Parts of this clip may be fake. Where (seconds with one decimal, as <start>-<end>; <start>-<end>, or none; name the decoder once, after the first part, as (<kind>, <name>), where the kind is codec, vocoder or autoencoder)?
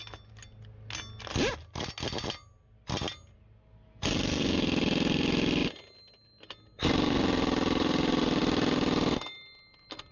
none